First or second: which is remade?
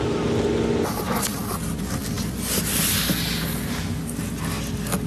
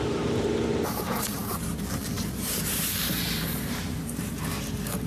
second